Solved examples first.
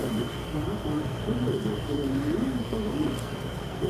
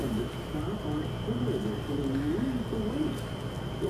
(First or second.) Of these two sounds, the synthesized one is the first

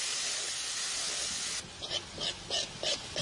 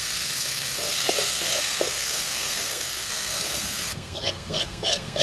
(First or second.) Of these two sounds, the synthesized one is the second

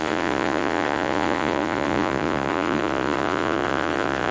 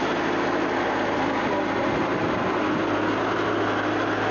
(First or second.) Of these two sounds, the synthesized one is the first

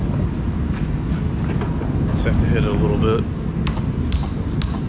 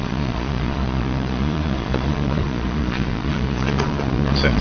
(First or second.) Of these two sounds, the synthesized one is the second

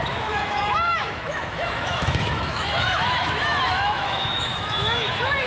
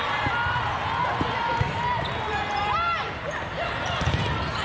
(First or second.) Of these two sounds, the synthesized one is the first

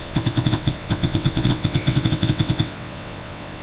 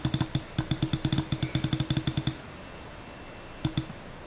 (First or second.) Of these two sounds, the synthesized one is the first